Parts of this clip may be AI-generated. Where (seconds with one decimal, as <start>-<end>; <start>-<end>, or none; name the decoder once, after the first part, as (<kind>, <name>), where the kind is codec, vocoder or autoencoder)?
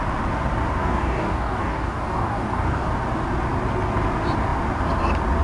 0.8-2.9 (codec, DAC)